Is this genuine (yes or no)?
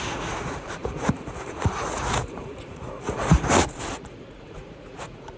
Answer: no